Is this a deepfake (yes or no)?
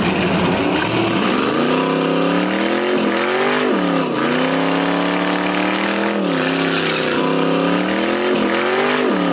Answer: no